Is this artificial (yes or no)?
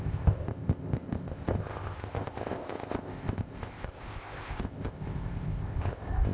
yes